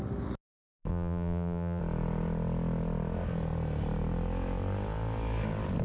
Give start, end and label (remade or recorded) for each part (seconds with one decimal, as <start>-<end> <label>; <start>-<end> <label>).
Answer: 0.0-0.9 recorded; 0.9-1.8 remade; 1.8-5.8 recorded

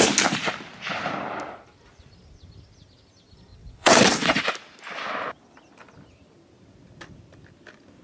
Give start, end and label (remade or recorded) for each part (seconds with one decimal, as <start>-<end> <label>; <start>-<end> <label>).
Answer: 0.0-3.5 recorded; 3.5-4.4 remade; 4.4-8.0 recorded

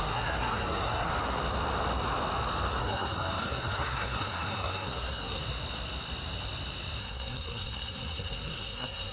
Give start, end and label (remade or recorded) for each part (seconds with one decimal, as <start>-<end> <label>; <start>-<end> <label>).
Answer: 0.0-1.1 remade; 1.1-2.8 recorded; 2.8-5.4 remade; 5.4-7.0 recorded; 7.0-9.1 remade

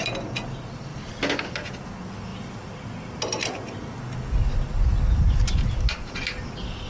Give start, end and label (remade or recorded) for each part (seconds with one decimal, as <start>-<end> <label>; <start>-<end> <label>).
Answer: 0.0-6.9 recorded